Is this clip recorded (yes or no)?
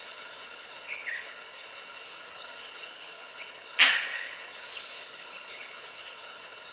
no